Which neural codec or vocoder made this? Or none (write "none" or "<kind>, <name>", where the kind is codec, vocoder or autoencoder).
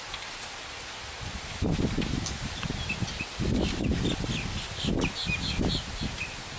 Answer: none